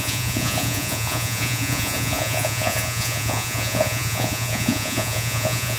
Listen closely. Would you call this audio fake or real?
fake